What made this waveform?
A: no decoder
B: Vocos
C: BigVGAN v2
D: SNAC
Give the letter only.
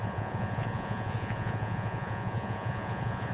B